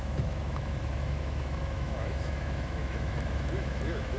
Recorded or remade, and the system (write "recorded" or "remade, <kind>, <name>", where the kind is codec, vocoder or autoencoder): remade, autoencoder, DAC-VAE